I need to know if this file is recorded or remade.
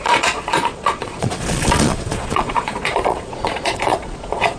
remade